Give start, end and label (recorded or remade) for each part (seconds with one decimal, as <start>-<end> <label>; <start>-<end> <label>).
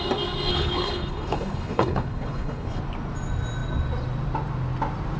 0.0-0.5 recorded; 0.5-2.8 remade; 2.8-5.2 recorded